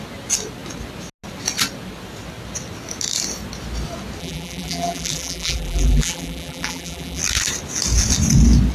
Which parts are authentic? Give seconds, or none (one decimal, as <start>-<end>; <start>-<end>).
0.0-4.2; 7.2-8.7